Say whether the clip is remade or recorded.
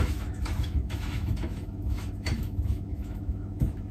remade